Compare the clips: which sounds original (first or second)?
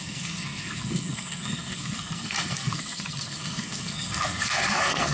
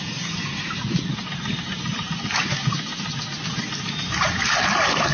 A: second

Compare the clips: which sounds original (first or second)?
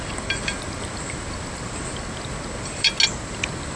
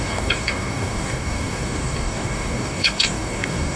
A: first